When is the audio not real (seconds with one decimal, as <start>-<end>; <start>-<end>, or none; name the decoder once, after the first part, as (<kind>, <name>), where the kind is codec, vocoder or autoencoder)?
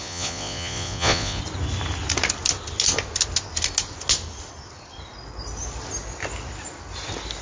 0.0-1.4 (vocoder, Vocos)